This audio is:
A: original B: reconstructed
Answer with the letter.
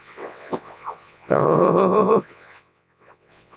B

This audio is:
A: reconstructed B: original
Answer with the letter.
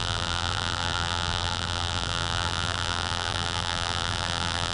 A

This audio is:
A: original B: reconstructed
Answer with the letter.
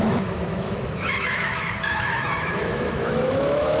B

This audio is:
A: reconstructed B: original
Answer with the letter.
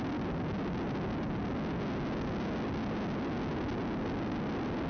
B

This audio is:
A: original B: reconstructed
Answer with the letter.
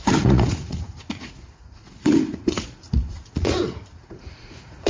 B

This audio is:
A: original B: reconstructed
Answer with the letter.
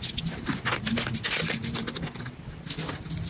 A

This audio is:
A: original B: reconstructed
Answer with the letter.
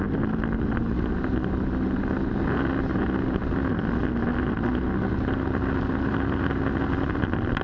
A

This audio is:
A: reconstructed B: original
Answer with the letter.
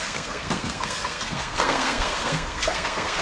A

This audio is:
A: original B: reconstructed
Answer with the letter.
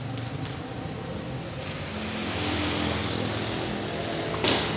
A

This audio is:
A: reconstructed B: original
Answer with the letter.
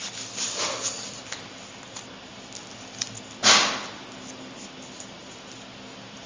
B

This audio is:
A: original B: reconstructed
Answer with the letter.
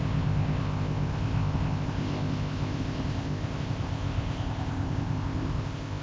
B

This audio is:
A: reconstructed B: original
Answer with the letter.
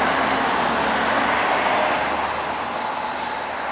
B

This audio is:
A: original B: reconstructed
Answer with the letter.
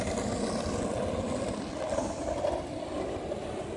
A